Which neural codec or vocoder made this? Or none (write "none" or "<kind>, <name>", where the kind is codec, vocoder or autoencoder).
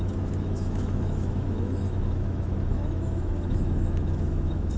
autoencoder, DAC-VAE